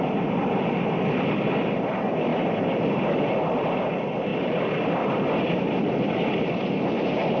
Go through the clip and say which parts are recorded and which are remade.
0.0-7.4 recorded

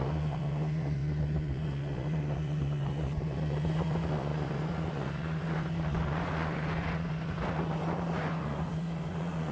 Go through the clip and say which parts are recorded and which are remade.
0.0-9.5 remade

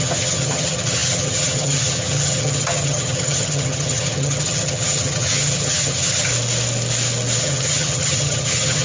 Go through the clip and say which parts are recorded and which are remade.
0.0-6.3 remade; 6.3-7.4 recorded; 7.4-8.8 remade